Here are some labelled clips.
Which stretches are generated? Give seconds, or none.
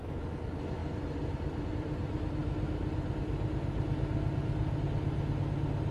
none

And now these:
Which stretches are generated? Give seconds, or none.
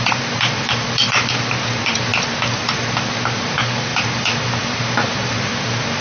0.0-2.1 (vocoder, BigVGAN v2); 3.1-5.5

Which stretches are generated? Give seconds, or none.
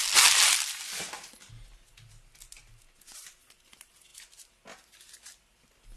none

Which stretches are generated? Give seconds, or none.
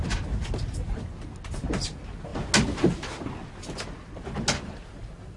none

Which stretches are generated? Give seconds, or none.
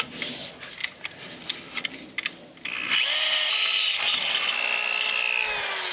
none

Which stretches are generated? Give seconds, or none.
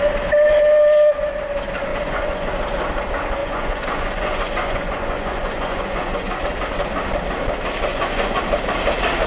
1.9-2.5 (vocoder, Vocos); 3.4-6.4; 7.9-8.4